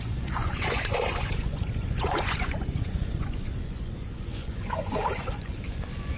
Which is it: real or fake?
fake